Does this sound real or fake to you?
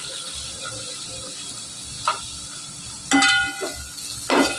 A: real